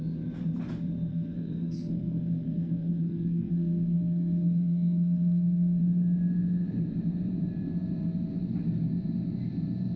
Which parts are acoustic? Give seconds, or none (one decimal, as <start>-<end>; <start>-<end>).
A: 0.0-1.1; 5.8-10.0

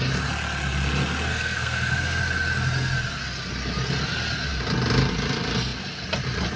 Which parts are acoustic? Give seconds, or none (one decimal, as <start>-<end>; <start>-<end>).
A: 0.0-1.3; 2.2-6.6

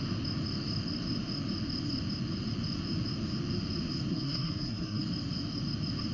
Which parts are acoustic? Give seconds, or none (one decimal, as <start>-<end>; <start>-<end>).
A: 0.0-4.1; 5.0-6.1

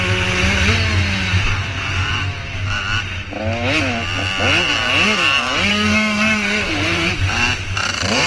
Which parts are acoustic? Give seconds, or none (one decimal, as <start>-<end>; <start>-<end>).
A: 0.0-5.7; 7.1-8.3